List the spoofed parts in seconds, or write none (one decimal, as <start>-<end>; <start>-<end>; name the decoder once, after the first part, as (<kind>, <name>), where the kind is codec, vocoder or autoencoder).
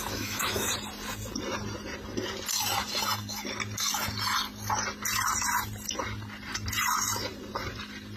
0.0-0.7 (autoencoder, DAC-VAE)